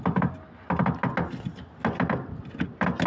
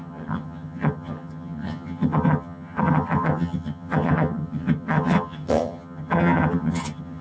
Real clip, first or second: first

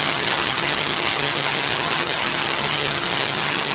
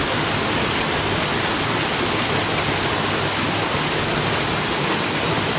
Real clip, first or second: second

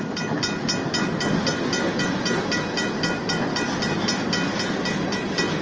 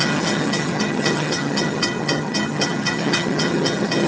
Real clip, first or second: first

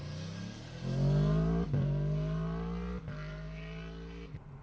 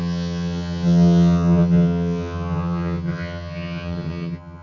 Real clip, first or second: first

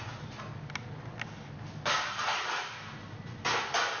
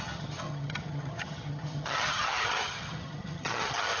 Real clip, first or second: first